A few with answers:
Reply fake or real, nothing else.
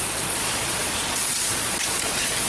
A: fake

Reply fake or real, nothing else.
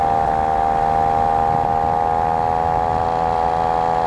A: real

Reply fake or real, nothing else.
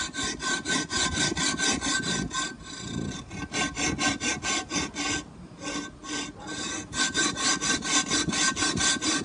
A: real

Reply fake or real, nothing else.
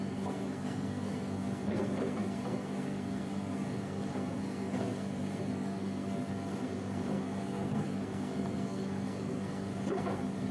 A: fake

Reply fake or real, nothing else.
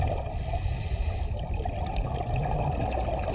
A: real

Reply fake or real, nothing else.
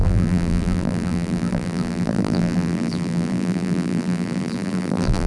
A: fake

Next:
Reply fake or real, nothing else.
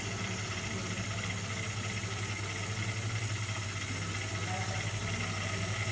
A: real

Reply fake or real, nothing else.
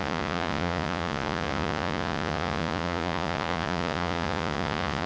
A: fake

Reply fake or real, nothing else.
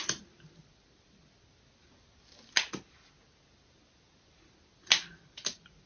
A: real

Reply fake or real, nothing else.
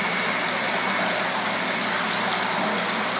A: real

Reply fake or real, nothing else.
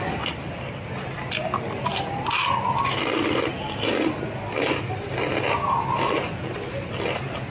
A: real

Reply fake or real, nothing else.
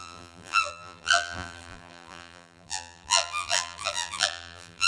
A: fake